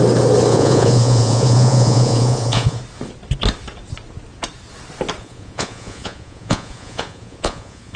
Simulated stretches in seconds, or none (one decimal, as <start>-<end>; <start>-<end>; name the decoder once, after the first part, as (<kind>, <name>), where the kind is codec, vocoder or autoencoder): 0.5-2.8 (vocoder, Vocos); 5.2-8.0